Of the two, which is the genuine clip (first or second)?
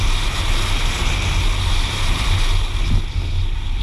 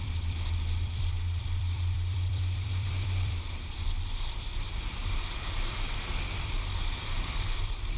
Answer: first